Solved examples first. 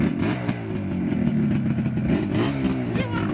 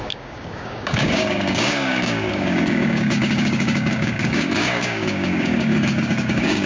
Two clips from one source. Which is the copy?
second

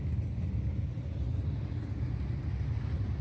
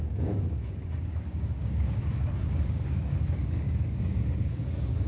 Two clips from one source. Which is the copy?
second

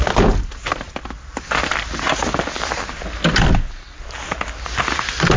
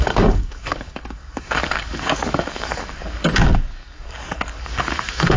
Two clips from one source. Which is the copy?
second